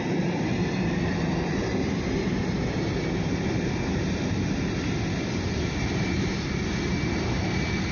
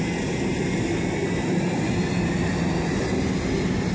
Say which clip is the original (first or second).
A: second